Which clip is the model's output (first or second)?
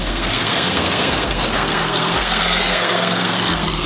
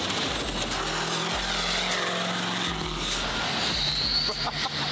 first